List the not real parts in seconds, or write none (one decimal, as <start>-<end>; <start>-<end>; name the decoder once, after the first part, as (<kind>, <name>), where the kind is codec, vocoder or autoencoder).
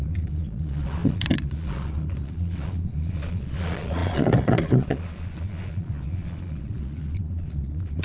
0.0-8.0 (vocoder, Vocos)